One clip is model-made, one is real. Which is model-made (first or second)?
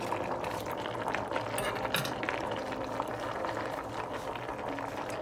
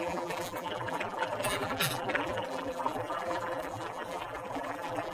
second